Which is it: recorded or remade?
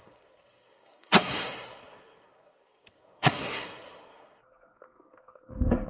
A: remade